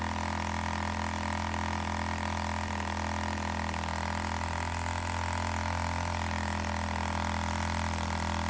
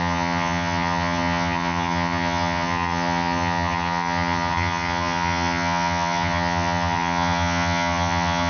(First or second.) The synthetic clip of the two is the second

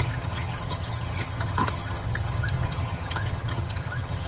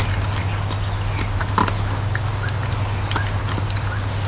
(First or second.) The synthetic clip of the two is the first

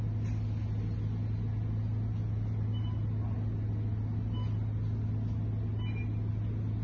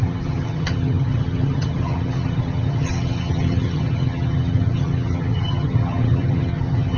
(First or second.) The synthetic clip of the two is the second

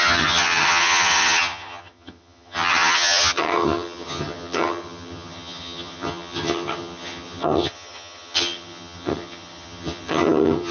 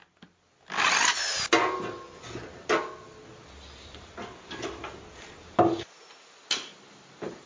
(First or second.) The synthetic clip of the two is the first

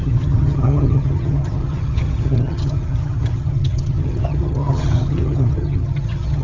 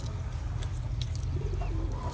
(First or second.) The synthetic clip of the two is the first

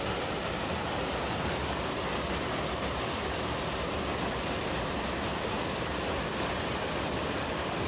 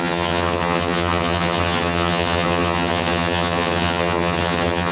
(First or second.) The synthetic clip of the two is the second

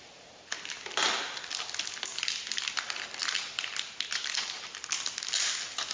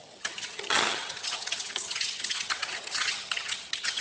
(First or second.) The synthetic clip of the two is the second